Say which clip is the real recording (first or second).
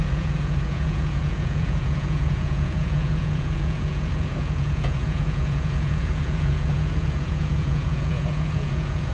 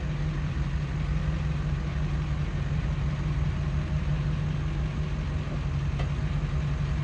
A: second